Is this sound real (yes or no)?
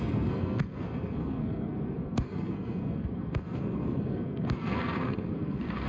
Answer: no